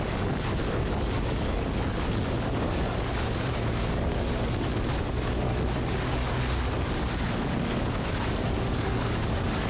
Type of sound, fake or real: fake